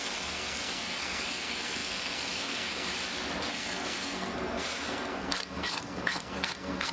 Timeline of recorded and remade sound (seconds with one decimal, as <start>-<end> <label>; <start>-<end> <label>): 0.0-2.9 remade; 2.9-3.4 recorded; 3.4-6.9 remade